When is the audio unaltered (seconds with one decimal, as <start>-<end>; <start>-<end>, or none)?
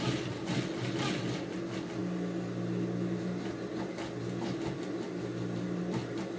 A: 0.0-6.4